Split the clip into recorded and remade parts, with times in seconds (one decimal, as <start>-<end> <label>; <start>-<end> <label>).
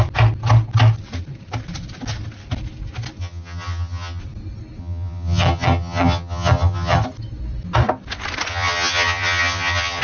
0.0-3.2 recorded; 3.2-4.2 remade; 4.2-4.8 recorded; 4.8-7.0 remade; 7.0-8.5 recorded; 8.5-10.0 remade